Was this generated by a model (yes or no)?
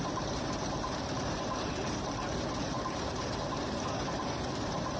yes